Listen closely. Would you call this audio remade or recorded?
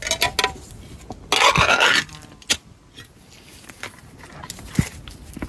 recorded